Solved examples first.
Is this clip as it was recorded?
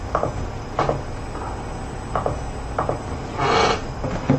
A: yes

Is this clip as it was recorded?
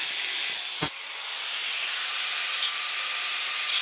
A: no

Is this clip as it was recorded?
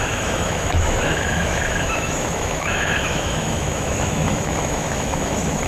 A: no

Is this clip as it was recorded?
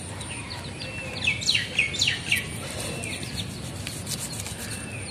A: yes